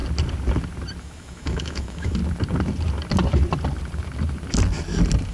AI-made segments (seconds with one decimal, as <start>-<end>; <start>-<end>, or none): 1.0-2.2